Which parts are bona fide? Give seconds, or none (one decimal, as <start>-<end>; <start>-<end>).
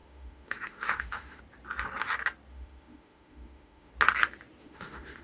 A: 1.4-2.5; 3.9-4.6